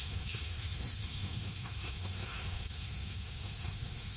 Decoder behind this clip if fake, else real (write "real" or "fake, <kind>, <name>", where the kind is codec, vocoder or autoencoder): fake, codec, SNAC